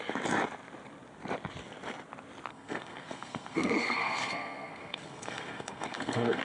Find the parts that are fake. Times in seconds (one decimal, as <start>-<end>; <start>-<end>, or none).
2.5-6.4